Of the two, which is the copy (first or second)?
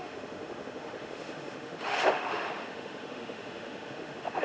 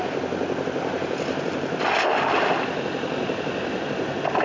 first